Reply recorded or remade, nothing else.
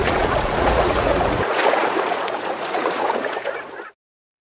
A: remade